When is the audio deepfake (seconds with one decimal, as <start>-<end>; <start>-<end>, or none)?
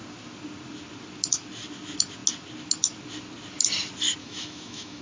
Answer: 4.2-5.0